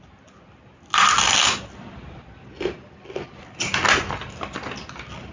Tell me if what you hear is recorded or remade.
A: recorded